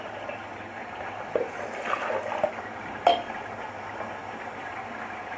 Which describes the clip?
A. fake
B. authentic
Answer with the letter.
B